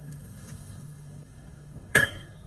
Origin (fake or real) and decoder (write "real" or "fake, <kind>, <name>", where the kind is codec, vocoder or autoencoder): fake, codec, SNAC